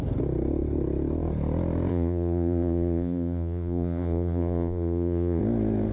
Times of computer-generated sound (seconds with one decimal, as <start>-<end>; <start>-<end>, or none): 1.9-5.4